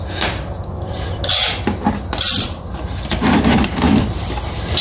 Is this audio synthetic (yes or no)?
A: no